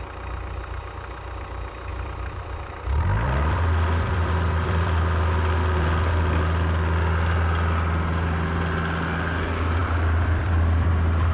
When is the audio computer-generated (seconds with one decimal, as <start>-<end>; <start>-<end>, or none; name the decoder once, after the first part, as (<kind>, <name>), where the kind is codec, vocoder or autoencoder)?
1.9-5.0 (vocoder, BigVGAN v2); 9.8-10.9